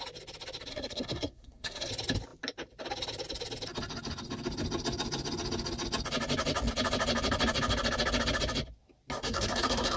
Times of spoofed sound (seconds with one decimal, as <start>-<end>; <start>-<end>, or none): 0.7-1.9; 9.2-10.0